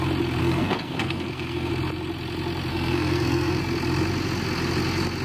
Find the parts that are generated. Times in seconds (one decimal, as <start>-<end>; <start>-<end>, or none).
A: 0.4-1.7; 2.7-3.6